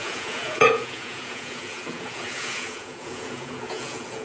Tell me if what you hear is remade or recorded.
remade